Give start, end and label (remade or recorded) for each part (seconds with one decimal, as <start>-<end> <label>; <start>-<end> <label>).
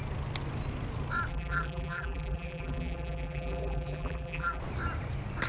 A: 0.0-1.3 recorded; 1.3-4.6 remade; 4.6-5.5 recorded